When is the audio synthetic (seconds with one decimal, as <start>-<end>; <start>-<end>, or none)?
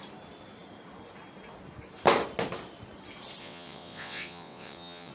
3.4-5.1